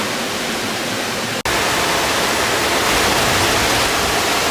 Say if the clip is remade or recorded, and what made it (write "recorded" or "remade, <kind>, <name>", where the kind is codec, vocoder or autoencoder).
recorded